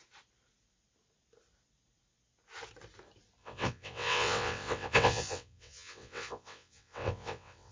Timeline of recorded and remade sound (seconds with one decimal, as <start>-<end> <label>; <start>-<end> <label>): 0.0-3.4 recorded; 3.4-7.7 remade

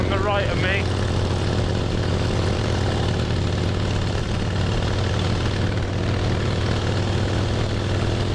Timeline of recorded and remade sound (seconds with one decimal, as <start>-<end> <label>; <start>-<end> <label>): 0.0-8.3 recorded

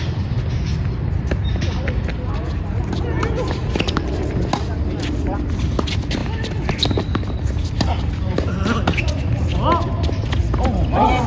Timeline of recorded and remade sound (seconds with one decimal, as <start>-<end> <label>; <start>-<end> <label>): 0.0-11.3 recorded

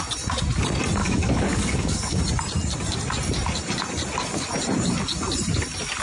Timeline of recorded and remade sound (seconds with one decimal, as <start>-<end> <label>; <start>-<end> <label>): 0.0-1.0 recorded; 1.0-2.2 remade; 2.2-6.0 recorded

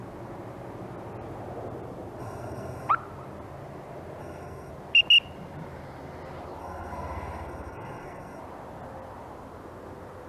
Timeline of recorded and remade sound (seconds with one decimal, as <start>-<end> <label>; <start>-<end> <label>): 0.0-2.2 recorded; 2.2-2.9 remade; 2.9-4.2 recorded; 4.2-4.7 remade; 4.7-6.6 recorded; 6.6-8.4 remade; 8.4-10.3 recorded